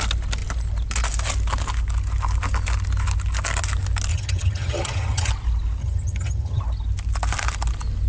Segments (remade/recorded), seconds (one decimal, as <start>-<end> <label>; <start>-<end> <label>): 0.0-4.1 recorded; 4.1-5.3 remade; 5.3-5.8 recorded; 5.8-6.6 remade; 6.6-8.1 recorded